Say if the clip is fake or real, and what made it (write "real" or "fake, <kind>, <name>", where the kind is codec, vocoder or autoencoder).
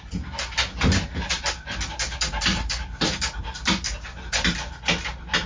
real